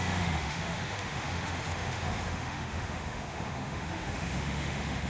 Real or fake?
fake